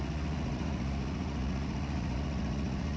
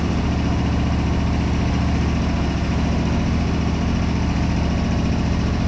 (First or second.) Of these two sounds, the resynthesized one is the first